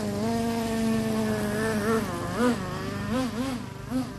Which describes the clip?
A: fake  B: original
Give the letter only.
B